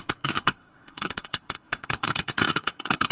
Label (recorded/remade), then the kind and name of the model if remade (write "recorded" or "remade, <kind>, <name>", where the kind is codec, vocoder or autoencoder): remade, codec, SNAC